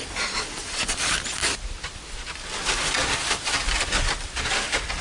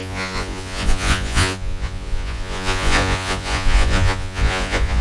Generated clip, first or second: second